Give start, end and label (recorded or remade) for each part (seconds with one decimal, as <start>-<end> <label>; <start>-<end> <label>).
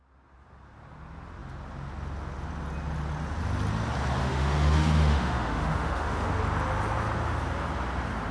0.0-4.2 recorded; 4.2-6.3 remade; 6.3-8.3 recorded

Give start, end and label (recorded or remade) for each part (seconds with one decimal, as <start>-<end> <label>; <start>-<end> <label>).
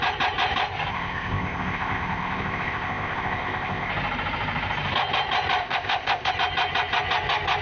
0.0-0.9 recorded; 0.9-3.9 remade; 3.9-5.6 recorded; 5.6-6.3 remade; 6.3-7.6 recorded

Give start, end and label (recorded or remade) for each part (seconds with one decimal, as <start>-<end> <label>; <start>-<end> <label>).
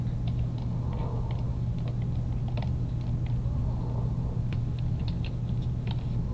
0.0-6.3 recorded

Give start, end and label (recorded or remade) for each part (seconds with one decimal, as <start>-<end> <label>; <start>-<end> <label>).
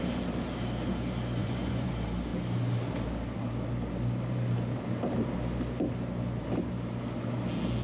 0.0-1.4 recorded; 1.4-1.9 remade; 1.9-7.8 recorded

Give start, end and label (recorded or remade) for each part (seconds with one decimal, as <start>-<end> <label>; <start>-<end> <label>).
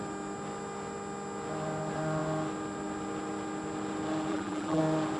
0.0-4.3 recorded; 4.3-4.8 remade; 4.8-5.2 recorded